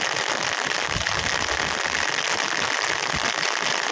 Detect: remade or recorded recorded